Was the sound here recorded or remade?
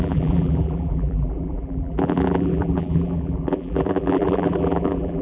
remade